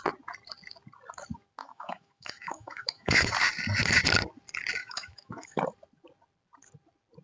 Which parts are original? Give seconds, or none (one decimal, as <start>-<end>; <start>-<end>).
0.0-1.6; 3.3-4.8; 5.6-7.2